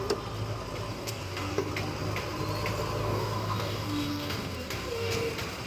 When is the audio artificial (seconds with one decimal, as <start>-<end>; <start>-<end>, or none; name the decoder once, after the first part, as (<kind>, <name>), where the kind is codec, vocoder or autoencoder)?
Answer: 0.9-1.7 (codec, DAC); 3.0-5.3